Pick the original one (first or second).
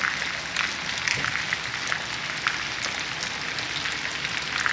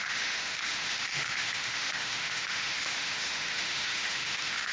first